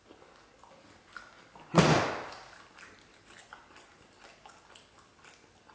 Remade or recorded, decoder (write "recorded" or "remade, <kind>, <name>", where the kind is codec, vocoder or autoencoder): recorded